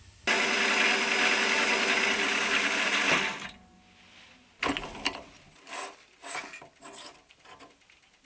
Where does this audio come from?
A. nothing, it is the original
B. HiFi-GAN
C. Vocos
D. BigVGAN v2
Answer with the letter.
A